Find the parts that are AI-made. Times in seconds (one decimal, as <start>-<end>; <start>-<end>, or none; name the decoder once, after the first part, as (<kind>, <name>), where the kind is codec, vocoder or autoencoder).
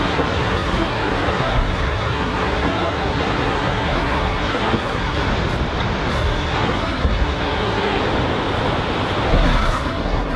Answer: 0.0-5.3 (codec, SNAC); 6.1-8.0; 9.3-10.4